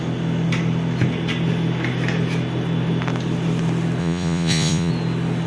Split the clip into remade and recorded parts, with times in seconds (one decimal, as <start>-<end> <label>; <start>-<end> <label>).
0.0-4.0 recorded; 4.0-4.9 remade; 4.9-5.5 recorded